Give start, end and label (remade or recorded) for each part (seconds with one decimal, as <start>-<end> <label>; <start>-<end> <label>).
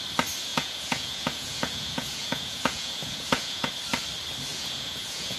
0.0-0.5 recorded; 0.5-3.7 remade; 3.7-4.5 recorded; 4.5-5.4 remade